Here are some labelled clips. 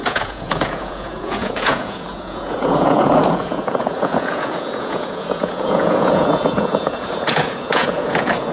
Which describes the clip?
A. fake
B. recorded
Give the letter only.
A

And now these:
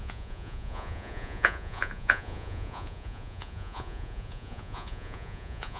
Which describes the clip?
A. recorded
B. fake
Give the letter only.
B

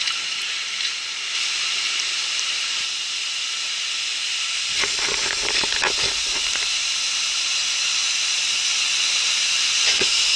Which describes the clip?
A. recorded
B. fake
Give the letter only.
A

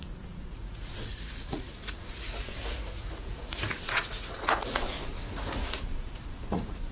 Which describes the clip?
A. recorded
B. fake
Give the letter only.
B